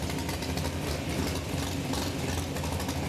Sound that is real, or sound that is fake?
real